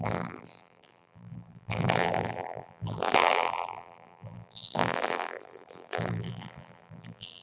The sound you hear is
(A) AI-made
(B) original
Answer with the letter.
A